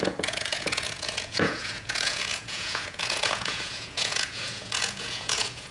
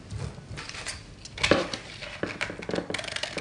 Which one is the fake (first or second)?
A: first